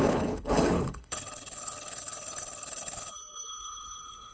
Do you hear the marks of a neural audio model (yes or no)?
yes